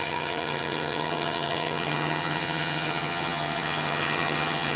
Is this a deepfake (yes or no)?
yes